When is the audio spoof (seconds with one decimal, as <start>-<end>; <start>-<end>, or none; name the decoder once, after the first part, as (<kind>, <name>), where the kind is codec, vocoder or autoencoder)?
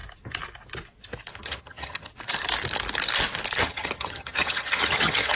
1.4-2.1 (vocoder, HiFi-GAN); 3.6-5.4